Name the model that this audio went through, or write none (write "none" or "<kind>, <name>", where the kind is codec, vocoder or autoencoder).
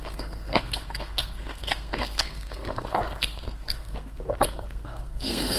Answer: codec, SNAC